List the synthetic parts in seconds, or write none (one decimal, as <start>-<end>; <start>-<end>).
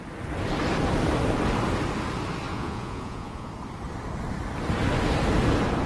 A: 2.5-3.5